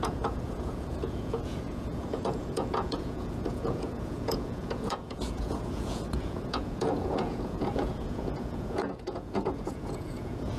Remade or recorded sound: remade